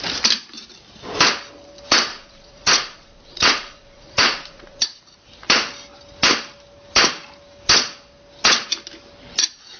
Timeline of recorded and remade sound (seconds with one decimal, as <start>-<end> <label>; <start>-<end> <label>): 0.0-2.1 recorded; 2.1-4.8 remade; 4.8-9.8 recorded